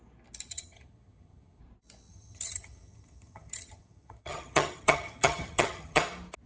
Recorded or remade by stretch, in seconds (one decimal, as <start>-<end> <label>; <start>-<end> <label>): 0.0-0.5 recorded; 0.5-1.6 remade; 1.6-2.1 recorded; 2.1-6.0 remade; 6.0-6.5 recorded